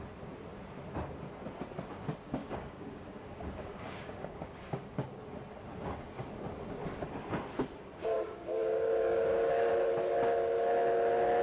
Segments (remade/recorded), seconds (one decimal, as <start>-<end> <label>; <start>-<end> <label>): 0.0-2.4 recorded; 2.4-5.2 remade; 5.2-8.0 recorded; 8.0-9.7 remade; 9.7-11.4 recorded